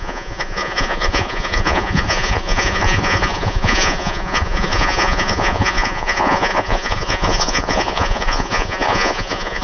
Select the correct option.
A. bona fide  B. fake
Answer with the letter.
B